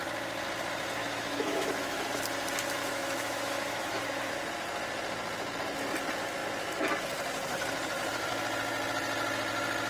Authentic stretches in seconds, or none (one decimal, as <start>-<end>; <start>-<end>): 0.0-1.0; 2.2-2.8; 4.3-9.9